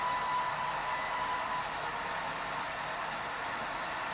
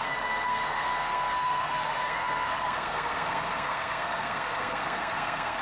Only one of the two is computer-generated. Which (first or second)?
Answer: second